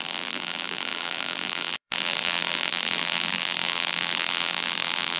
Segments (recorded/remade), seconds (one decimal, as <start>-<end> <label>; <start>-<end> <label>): 0.0-5.2 remade